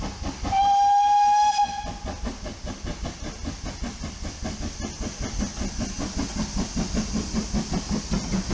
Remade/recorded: recorded